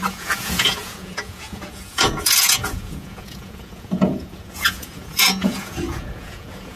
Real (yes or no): no